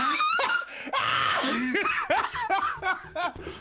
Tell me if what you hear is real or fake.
fake